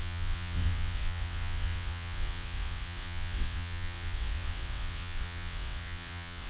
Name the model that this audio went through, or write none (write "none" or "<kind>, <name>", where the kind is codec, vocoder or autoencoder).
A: vocoder, WaveNeXt